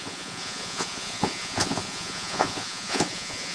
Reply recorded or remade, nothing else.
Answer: remade